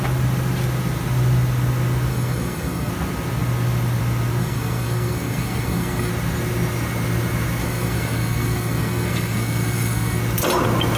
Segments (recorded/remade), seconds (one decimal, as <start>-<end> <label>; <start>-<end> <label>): 0.0-2.1 recorded; 2.1-2.9 remade; 2.9-4.4 recorded; 4.4-6.1 remade; 6.1-7.6 recorded; 7.6-10.2 remade; 10.2-11.0 recorded